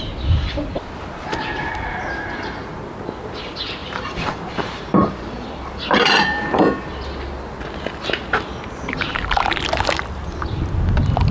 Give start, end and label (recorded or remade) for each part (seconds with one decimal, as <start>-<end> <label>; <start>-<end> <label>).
0.0-3.8 recorded; 3.8-6.6 remade; 6.6-11.3 recorded